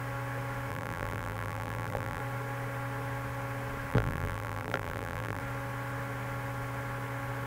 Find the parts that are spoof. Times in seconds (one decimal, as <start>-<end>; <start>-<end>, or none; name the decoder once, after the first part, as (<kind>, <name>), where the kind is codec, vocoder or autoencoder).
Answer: 0.7-2.2 (vocoder, BigVGAN v2); 3.9-5.4